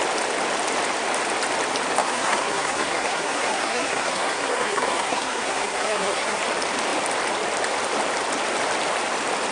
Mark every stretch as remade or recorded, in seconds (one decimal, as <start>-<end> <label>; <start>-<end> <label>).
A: 0.0-2.0 recorded; 2.0-6.4 remade; 6.4-9.5 recorded